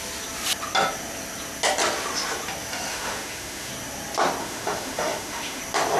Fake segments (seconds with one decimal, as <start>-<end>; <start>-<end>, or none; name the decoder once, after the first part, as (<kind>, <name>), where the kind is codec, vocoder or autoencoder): 2.9-3.7 (autoencoder, DAC-VAE); 4.4-5.6